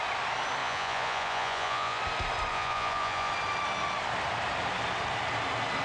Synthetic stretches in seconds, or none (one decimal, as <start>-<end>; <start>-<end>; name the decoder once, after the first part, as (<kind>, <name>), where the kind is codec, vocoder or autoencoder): 0.6-2.0 (vocoder, Vocos); 2.5-3.3